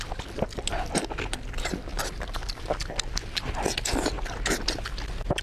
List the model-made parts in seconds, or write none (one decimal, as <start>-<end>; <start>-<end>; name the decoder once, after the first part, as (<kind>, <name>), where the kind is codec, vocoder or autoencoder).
none